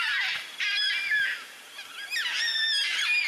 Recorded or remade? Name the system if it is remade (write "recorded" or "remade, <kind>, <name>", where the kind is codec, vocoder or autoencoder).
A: recorded